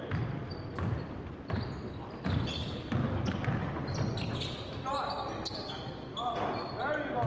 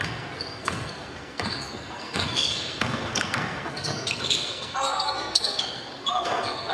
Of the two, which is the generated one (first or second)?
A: second